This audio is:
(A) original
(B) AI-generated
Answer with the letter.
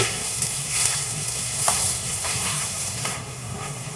B